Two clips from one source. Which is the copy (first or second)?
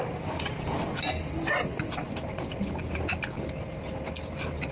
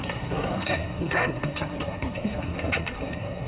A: second